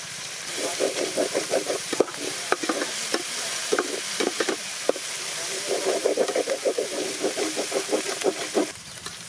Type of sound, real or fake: fake